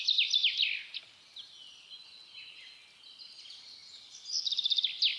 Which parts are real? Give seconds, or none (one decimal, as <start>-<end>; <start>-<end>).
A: 0.0-5.2